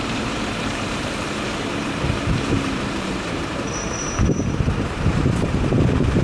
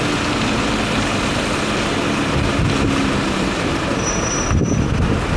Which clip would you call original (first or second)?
second